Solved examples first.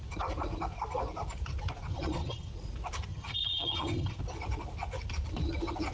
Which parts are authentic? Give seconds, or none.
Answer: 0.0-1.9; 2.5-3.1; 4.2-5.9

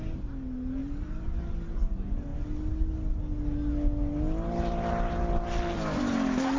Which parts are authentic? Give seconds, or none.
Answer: 0.0-6.6

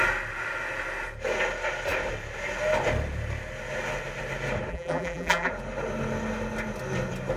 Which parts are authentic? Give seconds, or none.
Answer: 0.0-4.7; 5.5-7.4

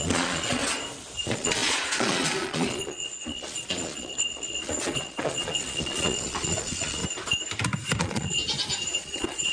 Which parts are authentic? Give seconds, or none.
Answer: 0.6-1.2; 7.0-8.0; 8.4-9.0

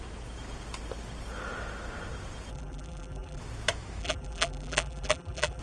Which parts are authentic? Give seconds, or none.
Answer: 0.0-2.5; 3.4-4.0

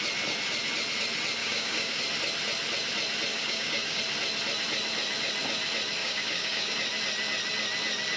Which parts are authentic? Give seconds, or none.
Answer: 0.0-1.4; 2.0-3.3; 4.0-6.0; 6.7-8.2

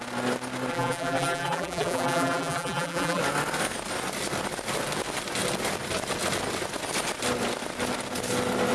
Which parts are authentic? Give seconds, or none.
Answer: 0.0-0.7; 3.2-8.7